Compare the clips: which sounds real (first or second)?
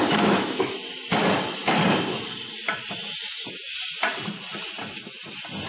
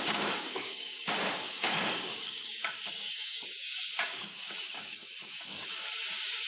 first